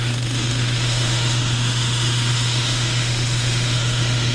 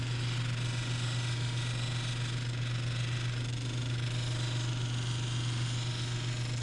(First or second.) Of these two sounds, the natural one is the second